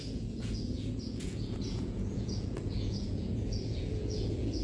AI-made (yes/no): yes